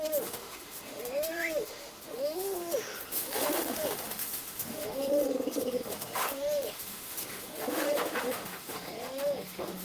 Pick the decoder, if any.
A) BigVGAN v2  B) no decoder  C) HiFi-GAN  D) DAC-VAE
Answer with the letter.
D